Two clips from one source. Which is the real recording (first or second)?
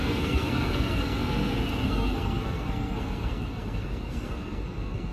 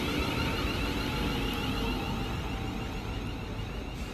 second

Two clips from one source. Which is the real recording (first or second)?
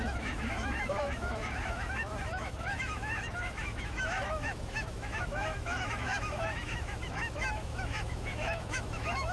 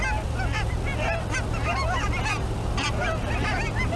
second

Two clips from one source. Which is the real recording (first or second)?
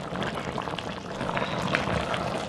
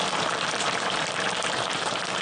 first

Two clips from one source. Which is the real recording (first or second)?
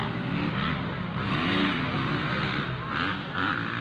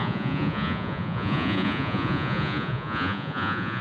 first